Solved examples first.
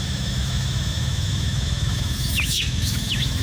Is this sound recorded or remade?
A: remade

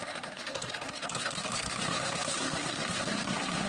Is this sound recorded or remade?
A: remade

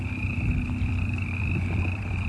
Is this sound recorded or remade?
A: remade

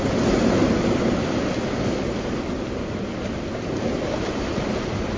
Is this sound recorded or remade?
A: recorded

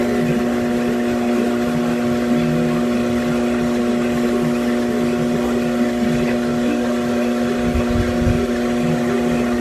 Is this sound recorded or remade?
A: recorded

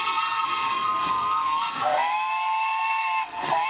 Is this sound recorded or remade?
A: remade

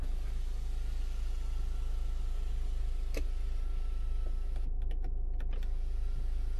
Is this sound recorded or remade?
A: recorded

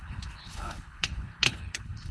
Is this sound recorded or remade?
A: remade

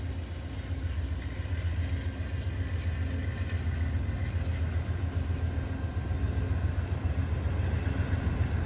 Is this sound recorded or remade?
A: recorded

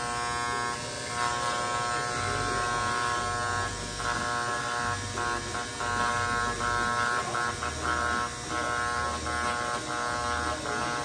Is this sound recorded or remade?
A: recorded